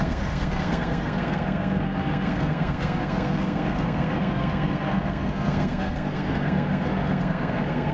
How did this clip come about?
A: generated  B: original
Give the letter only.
A